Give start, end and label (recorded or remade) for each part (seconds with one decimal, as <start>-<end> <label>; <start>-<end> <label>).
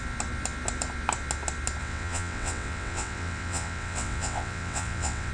0.0-1.8 recorded; 1.8-5.3 remade